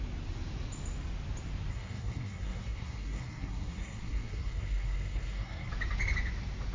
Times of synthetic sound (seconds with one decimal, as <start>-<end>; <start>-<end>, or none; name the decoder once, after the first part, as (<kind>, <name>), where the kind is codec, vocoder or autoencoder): 1.7-5.7 (codec, SNAC)